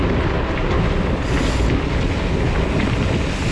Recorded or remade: recorded